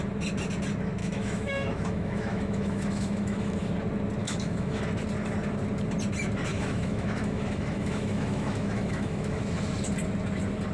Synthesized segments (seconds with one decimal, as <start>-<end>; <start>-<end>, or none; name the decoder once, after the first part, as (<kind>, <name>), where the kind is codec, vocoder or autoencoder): 1.0-3.7 (autoencoder, DAC-VAE); 4.2-4.8; 6.5-9.4